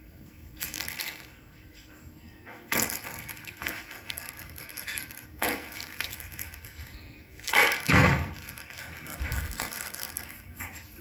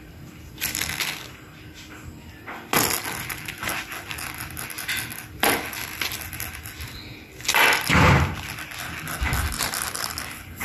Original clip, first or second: second